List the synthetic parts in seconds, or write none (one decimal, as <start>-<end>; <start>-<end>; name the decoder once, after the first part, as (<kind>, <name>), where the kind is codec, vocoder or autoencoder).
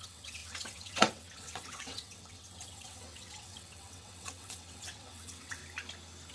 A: 0.0-5.6 (vocoder, WaveNeXt)